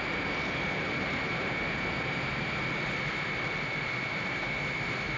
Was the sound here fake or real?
real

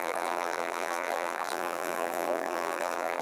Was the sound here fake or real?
fake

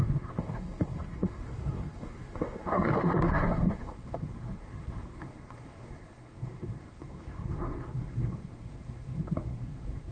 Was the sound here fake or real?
fake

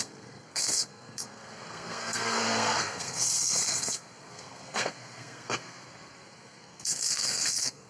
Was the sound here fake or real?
fake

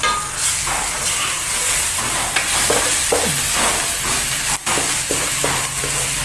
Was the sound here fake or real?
real